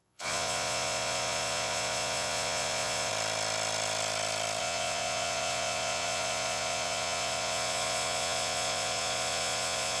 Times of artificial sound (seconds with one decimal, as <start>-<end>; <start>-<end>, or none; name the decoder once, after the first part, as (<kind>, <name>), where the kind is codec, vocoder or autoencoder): 0.0-3.1 (vocoder, Vocos); 4.6-10.0